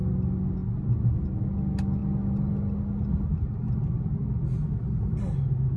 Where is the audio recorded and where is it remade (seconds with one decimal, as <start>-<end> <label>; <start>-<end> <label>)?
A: 0.0-5.8 recorded